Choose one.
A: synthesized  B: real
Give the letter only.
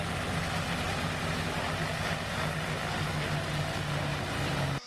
B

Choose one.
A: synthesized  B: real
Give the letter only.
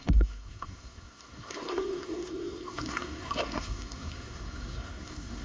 A